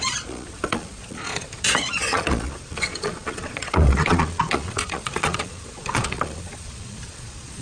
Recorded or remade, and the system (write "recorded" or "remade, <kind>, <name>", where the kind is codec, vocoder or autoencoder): remade, vocoder, Vocos